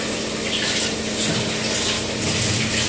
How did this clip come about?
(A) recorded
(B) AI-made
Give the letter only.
A